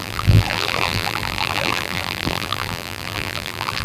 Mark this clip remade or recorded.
remade